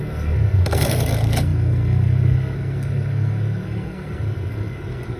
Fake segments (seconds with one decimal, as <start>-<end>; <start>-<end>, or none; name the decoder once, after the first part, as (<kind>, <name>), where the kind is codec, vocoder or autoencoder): 0.0-5.2 (codec, SNAC)